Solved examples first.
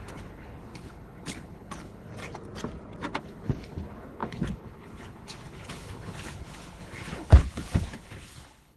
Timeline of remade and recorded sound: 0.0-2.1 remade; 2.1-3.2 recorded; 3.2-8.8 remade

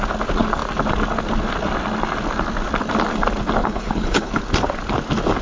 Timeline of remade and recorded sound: 0.0-3.6 recorded; 3.6-4.4 remade; 4.4-5.4 recorded

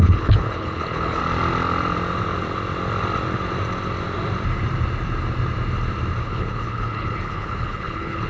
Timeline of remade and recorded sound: 0.0-1.2 remade; 1.2-6.2 recorded; 6.2-8.3 remade

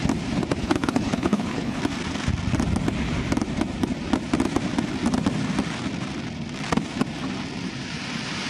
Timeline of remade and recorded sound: 0.0-0.6 recorded; 0.6-1.8 remade; 1.8-8.5 recorded

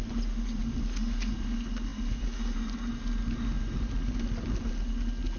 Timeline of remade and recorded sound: 0.0-5.4 recorded

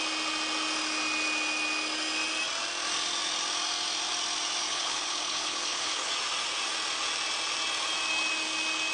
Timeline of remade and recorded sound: 0.0-4.6 recorded; 4.6-6.1 remade; 6.1-8.9 recorded